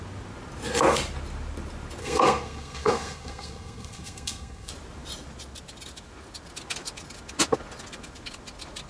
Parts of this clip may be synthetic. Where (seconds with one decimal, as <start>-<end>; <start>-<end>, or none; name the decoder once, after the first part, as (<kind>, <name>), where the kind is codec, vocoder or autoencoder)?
2.0-4.7 (codec, SNAC)